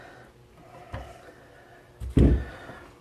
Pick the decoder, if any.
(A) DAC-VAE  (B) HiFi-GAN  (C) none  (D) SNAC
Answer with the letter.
C